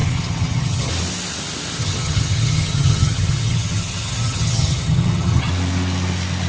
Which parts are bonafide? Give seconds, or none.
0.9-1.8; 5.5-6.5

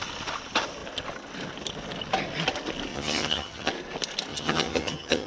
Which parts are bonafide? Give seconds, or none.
0.0-2.9; 3.7-4.3

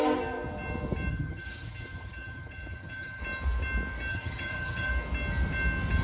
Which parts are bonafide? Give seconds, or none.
0.0-1.1; 3.2-4.1; 4.9-6.0

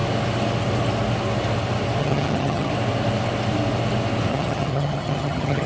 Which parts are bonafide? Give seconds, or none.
0.0-2.0; 2.7-4.3

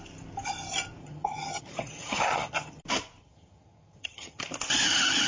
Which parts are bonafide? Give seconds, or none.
0.0-1.0; 2.8-3.2; 4.4-5.3

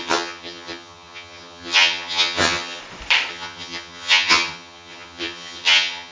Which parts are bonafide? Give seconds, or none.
2.8-3.3

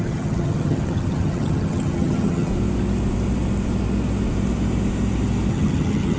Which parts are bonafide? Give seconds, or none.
2.5-5.5

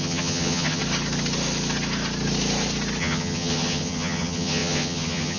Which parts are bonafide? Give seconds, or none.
0.8-3.0